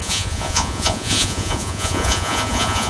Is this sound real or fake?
fake